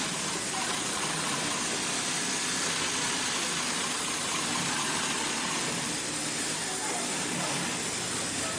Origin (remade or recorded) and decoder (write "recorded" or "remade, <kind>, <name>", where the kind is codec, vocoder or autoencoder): recorded